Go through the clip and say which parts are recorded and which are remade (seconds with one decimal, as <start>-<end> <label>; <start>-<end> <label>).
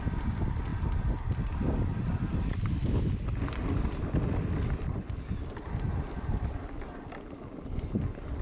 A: 0.0-8.4 recorded